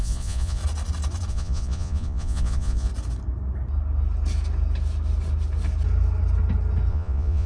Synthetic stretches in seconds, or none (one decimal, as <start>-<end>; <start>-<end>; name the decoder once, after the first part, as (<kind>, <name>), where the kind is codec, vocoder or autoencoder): 0.0-0.6 (vocoder, Vocos); 1.3-2.9; 6.9-7.5